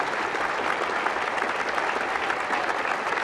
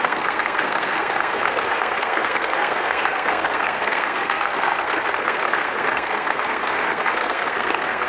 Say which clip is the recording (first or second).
first